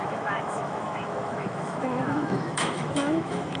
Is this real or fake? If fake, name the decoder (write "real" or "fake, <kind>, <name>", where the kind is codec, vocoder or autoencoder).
fake, autoencoder, DAC-VAE